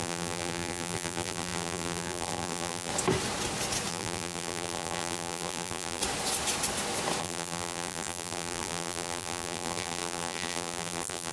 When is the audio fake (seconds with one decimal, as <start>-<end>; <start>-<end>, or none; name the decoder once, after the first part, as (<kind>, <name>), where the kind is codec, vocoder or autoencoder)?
0.0-2.9 (vocoder, BigVGAN v2); 3.9-6.0; 7.2-11.3

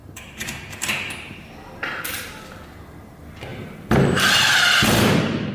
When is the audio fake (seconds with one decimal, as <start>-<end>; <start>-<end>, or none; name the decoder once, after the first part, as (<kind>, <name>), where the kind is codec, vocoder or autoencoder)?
0.0-0.5 (vocoder, BigVGAN v2); 3.5-5.5

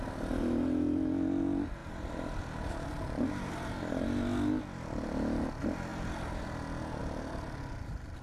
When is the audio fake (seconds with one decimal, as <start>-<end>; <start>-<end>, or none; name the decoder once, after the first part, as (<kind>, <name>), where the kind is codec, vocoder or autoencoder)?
none

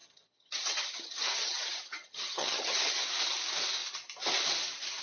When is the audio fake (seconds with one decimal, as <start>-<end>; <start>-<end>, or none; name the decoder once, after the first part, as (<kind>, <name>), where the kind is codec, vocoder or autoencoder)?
0.0-3.0 (vocoder, HiFi-GAN)

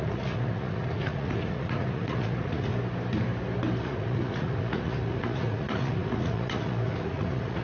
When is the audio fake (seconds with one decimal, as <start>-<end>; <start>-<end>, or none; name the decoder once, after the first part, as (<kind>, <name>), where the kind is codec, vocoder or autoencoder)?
0.0-2.7 (vocoder, Vocos); 3.8-7.6

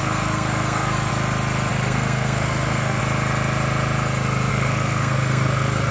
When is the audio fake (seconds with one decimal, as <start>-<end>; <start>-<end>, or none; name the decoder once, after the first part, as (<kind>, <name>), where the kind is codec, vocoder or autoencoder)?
0.0-1.1 (codec, SNAC); 1.7-3.0; 4.5-5.9

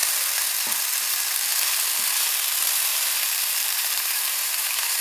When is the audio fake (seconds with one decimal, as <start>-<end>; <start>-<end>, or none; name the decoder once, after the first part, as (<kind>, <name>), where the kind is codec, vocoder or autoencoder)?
2.9-5.0 (vocoder, BigVGAN v2)

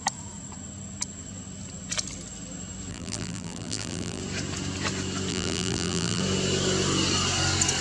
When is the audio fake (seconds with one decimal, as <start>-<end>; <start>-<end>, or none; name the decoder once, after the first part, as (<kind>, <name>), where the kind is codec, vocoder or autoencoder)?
2.9-4.2 (vocoder, BigVGAN v2); 5.3-6.2